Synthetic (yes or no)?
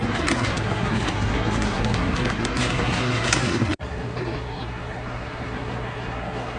yes